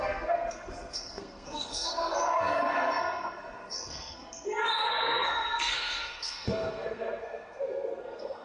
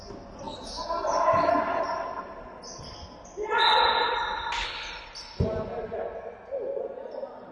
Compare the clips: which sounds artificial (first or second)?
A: first